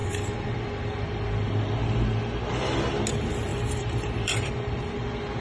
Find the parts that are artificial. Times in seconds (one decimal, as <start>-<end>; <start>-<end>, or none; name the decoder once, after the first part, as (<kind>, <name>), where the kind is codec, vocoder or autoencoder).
3.5-4.5 (vocoder, BigVGAN v2)